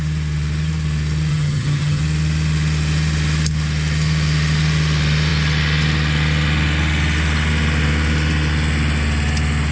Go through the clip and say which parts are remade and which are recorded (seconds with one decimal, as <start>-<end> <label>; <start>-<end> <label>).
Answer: 0.0-1.3 recorded; 1.3-2.0 remade; 2.0-9.7 recorded

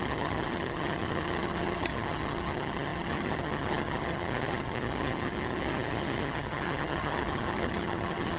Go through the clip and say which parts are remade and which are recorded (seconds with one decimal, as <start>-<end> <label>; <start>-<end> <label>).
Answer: 0.0-8.4 remade

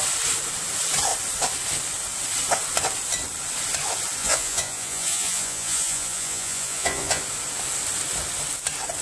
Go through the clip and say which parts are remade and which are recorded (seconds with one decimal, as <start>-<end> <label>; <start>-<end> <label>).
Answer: 0.0-4.2 recorded; 4.2-7.2 remade; 7.2-9.0 recorded